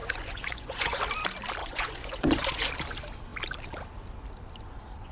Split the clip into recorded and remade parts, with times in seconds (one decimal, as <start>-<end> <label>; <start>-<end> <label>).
0.0-1.0 remade; 1.0-1.6 recorded; 1.6-2.7 remade; 2.7-5.1 recorded